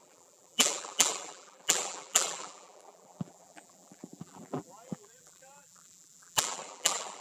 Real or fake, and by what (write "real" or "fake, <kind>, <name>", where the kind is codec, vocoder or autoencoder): fake, vocoder, BigVGAN v2